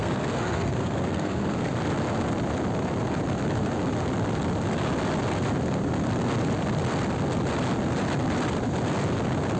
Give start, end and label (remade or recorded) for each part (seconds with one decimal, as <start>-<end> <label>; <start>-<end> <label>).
0.0-1.8 remade; 1.8-9.6 recorded

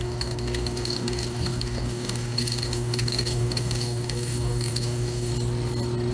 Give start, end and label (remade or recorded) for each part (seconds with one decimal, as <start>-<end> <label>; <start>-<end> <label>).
0.0-5.3 remade; 5.3-6.1 recorded